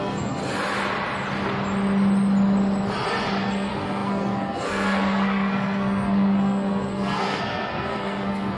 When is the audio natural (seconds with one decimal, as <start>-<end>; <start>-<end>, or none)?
0.4-3.4